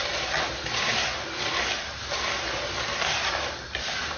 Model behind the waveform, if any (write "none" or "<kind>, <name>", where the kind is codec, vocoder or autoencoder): none